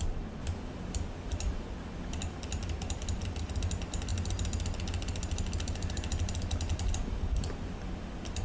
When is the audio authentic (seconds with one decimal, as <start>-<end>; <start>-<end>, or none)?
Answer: 0.0-8.4